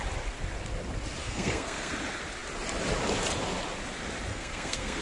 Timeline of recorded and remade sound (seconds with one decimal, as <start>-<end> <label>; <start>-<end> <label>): 0.0-1.2 recorded; 1.2-1.9 remade; 1.9-4.3 recorded; 4.3-5.0 remade